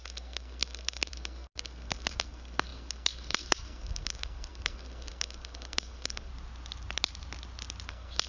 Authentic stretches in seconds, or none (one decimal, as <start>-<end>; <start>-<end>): 6.3-7.9